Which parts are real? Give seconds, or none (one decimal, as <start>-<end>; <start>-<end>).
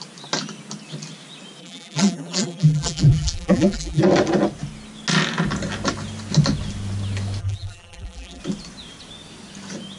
0.0-1.6; 4.0-7.4; 8.4-10.0